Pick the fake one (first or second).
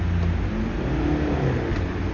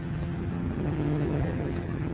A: second